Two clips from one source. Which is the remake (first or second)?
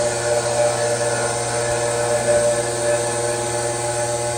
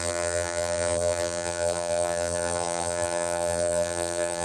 second